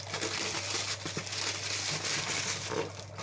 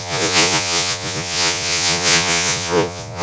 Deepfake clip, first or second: second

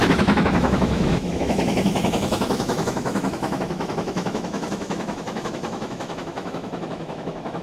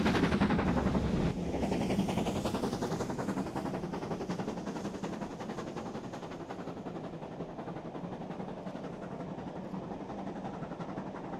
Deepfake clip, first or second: first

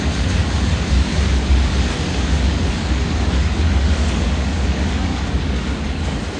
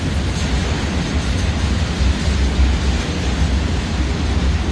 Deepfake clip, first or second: first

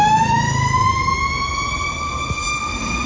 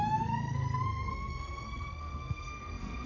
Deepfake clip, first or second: second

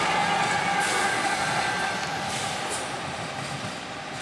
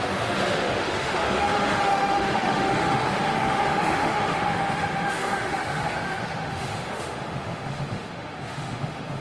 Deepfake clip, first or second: second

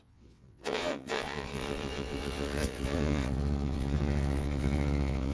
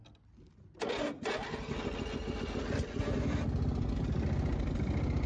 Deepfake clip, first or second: first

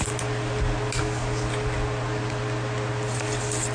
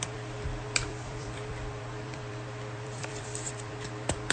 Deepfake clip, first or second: second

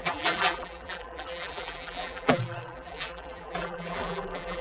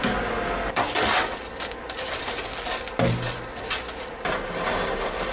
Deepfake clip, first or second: first